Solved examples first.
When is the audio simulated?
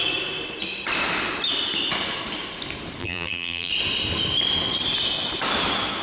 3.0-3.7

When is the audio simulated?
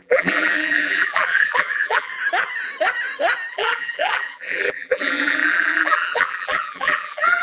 0.0-2.1; 3.5-7.4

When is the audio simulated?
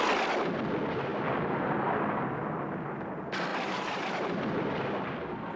3.5-4.8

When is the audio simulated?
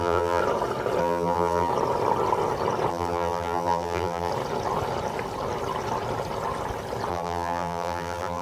0.0-0.4; 1.0-1.7; 2.9-4.3; 7.1-8.4